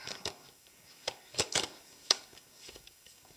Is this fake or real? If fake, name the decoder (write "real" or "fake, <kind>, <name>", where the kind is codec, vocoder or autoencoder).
fake, codec, DAC